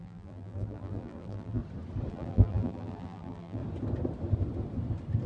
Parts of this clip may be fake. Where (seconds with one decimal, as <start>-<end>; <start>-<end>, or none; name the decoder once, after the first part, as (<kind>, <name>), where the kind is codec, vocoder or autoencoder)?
0.0-1.6 (vocoder, BigVGAN v2); 2.1-3.6